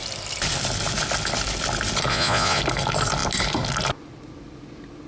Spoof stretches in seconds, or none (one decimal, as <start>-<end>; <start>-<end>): 2.1-2.6